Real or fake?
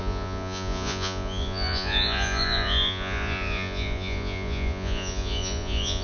fake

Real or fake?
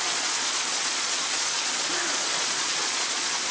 fake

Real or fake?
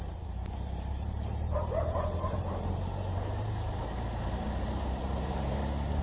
fake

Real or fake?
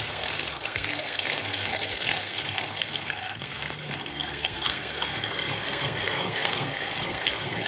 fake